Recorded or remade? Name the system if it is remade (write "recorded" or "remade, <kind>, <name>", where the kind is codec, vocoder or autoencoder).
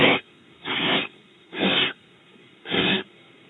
remade, codec, SNAC